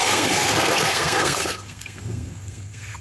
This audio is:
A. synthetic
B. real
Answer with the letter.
A